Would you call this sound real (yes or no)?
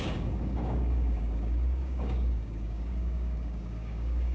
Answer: no